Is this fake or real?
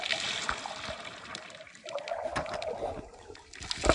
real